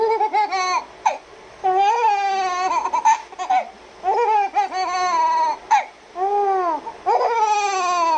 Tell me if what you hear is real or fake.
real